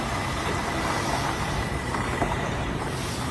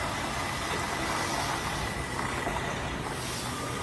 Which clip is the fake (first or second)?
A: first